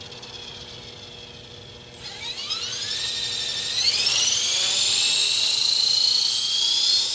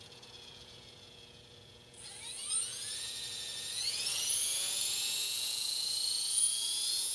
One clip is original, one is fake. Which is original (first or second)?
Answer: first